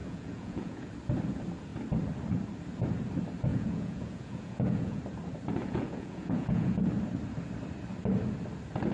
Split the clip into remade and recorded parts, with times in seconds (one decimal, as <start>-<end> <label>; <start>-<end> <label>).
0.0-0.9 remade; 0.9-3.5 recorded; 3.5-5.0 remade; 5.0-5.6 recorded; 5.6-6.9 remade; 6.9-8.9 recorded